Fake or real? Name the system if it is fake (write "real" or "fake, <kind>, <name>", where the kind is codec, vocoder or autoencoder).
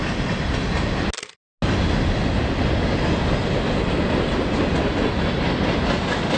real